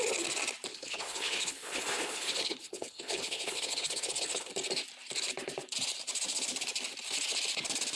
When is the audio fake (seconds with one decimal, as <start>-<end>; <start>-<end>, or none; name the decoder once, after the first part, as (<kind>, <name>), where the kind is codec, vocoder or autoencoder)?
0.7-4.5 (codec, HILCodec)